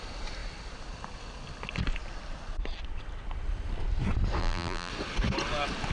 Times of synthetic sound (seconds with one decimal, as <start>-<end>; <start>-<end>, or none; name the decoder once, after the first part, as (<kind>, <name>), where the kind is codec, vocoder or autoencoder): 4.4-4.9 (vocoder, BigVGAN v2)